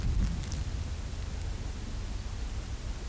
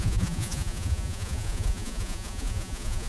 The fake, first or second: second